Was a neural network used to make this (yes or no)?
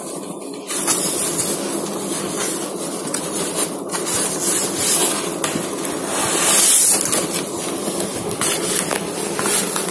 no